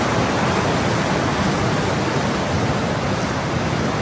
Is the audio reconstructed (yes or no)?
no